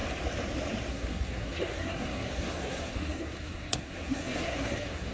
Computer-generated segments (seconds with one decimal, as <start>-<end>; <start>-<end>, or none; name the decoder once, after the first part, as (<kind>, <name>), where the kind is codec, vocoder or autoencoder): 0.9-5.1 (codec, SNAC)